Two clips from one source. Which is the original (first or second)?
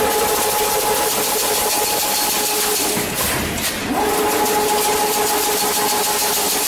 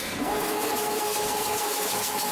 first